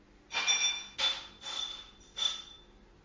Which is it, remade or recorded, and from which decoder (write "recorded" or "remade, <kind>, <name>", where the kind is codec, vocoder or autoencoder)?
recorded